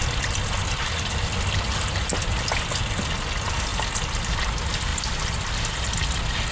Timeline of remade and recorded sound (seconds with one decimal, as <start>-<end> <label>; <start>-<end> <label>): 0.0-6.5 recorded